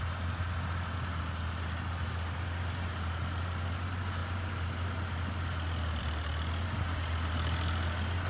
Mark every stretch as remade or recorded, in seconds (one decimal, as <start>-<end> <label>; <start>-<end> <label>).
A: 0.0-8.3 recorded